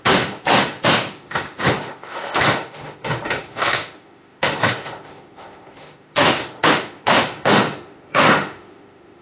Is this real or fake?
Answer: fake